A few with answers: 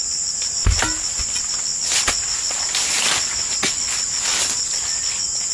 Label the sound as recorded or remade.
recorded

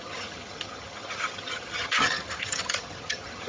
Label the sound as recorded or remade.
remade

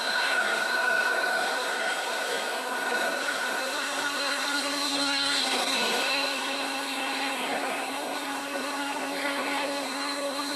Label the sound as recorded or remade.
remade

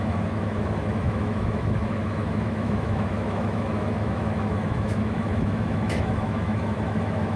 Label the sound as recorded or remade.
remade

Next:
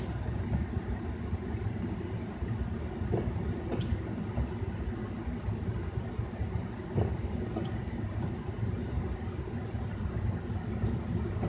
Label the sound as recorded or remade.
recorded